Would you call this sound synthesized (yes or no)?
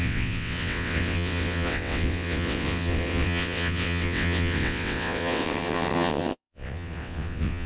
yes